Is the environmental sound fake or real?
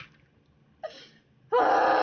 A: real